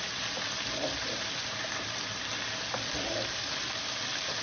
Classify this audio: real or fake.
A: real